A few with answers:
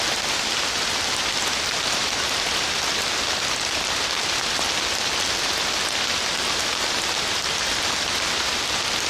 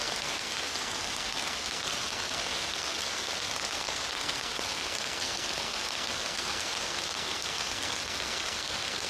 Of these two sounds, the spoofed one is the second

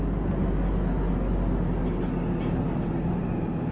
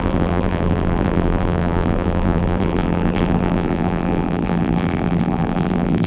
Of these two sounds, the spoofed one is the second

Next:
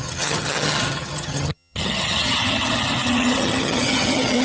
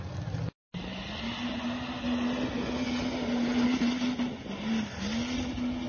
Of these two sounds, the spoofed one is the first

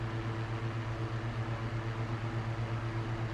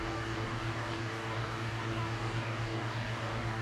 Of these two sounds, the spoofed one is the second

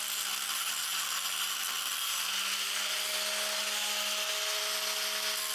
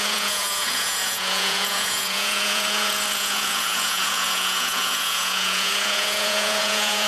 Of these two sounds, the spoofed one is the second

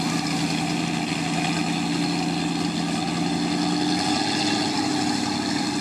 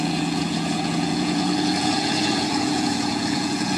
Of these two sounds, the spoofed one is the second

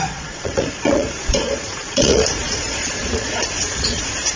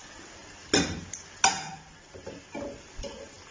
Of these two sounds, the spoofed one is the first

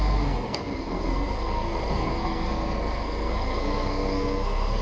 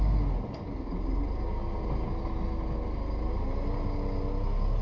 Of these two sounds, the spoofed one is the first